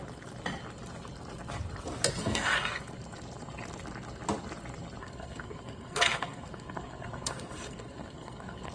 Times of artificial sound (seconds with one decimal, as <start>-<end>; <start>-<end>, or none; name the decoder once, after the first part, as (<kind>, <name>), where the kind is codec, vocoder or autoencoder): 2.2-2.8 (codec, SNAC); 5.0-8.7